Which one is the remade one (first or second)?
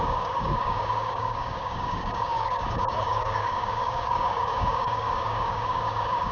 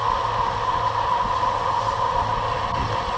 first